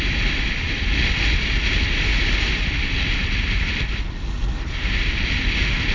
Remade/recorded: recorded